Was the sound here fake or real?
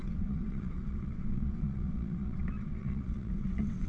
fake